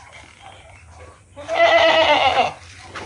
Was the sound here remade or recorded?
recorded